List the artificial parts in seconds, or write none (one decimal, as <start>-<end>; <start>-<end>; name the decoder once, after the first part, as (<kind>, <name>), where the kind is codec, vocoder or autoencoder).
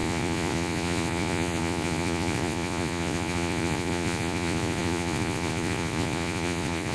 0.0-6.9 (vocoder, Vocos)